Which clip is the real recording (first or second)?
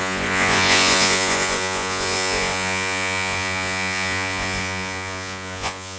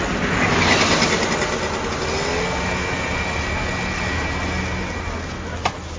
second